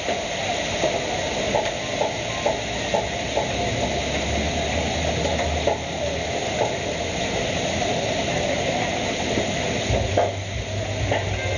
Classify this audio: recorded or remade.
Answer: recorded